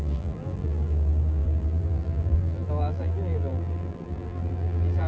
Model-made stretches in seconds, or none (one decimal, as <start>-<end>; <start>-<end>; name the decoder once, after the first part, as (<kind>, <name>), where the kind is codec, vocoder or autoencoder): 0.0-5.1 (vocoder, BigVGAN v2)

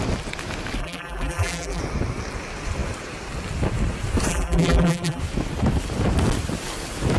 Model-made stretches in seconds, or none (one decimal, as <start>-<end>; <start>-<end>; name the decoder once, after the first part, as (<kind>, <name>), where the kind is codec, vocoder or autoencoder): 0.8-1.8 (vocoder, BigVGAN v2); 4.3-5.2

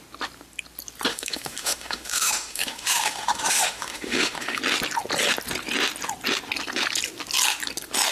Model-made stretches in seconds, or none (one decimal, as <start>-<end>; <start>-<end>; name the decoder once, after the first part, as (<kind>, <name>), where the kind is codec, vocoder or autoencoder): 1.1-4.6 (autoencoder, DAC-VAE)

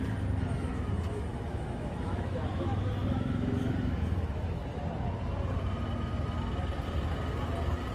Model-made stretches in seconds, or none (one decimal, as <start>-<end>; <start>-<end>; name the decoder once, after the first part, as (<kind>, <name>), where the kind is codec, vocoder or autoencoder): 0.7-4.8 (autoencoder, DAC-VAE)